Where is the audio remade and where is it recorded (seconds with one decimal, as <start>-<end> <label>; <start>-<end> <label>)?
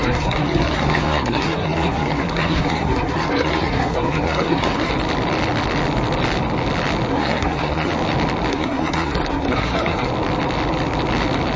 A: 0.0-4.9 remade; 4.9-7.1 recorded; 7.1-7.9 remade; 7.9-8.5 recorded; 8.5-10.1 remade; 10.1-11.6 recorded